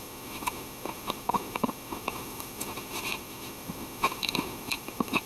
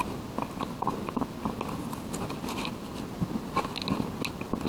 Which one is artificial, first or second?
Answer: first